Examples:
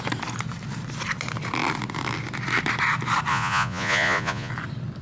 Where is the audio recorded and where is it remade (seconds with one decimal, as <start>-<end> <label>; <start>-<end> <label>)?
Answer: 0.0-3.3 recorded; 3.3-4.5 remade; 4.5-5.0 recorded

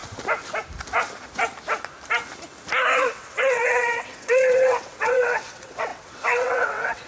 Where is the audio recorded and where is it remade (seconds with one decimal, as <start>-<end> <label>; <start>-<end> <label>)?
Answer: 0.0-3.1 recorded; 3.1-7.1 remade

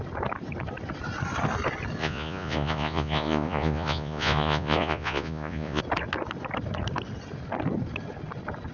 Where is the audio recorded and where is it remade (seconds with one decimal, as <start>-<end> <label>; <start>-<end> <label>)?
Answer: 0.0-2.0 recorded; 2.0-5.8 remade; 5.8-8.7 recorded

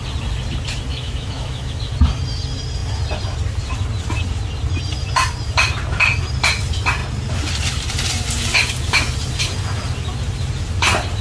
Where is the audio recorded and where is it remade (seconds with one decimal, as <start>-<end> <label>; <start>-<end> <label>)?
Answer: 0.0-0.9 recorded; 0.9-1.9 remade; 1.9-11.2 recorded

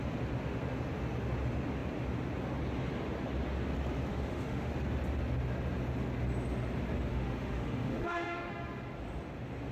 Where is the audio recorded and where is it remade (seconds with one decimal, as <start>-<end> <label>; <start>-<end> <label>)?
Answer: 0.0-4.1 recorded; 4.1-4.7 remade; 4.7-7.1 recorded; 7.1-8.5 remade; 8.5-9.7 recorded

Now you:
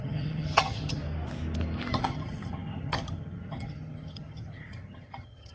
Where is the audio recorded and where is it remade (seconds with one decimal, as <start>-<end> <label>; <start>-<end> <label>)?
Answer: 0.0-1.0 remade; 1.0-1.9 recorded; 1.9-5.5 remade